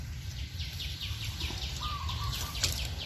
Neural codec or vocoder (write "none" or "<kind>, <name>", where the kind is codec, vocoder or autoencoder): none